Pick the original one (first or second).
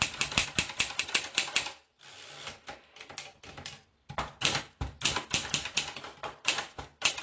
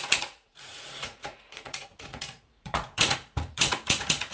first